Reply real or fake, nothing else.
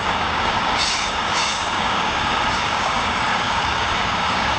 fake